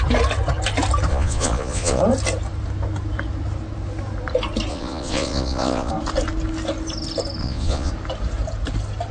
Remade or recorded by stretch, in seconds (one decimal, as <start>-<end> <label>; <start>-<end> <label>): 0.0-1.1 recorded; 1.1-2.0 remade; 2.0-4.7 recorded; 4.7-5.9 remade; 5.9-7.4 recorded; 7.4-7.9 remade; 7.9-9.1 recorded

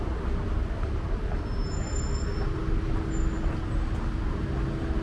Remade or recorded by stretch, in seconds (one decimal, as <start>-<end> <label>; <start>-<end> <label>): 0.0-5.0 recorded

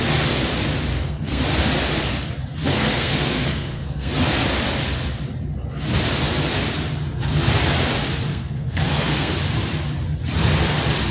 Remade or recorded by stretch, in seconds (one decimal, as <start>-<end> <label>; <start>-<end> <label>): 0.0-0.9 recorded; 0.9-1.4 remade; 1.4-2.7 recorded; 2.7-4.1 remade; 4.1-8.3 recorded; 8.3-9.3 remade; 9.3-11.1 recorded

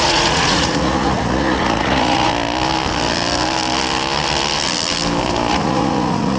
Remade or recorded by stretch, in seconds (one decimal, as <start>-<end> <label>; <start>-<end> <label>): 0.0-2.3 remade; 2.3-5.5 recorded; 5.5-6.4 remade